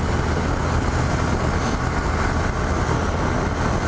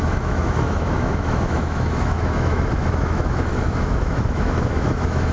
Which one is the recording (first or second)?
first